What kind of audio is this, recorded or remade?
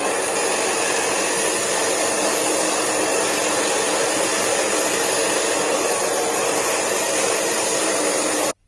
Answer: recorded